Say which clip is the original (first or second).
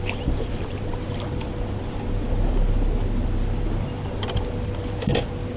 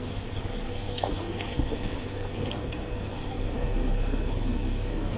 first